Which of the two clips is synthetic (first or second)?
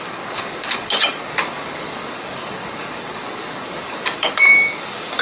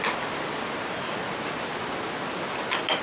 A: first